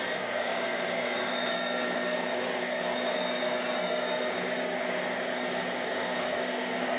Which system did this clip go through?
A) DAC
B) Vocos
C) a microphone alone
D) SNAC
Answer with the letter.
A